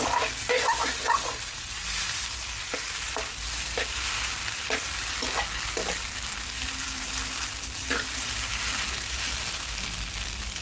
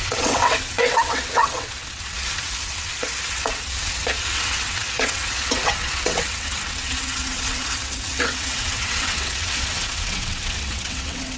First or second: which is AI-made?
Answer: second